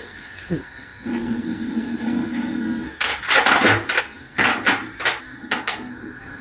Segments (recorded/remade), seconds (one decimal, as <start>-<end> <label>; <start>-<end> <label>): 0.0-3.1 remade; 3.1-4.0 recorded; 4.0-4.5 remade; 4.5-5.2 recorded; 5.2-6.4 remade